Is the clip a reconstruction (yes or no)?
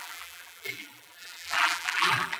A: yes